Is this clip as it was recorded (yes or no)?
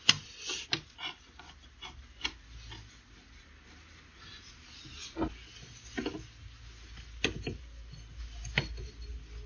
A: yes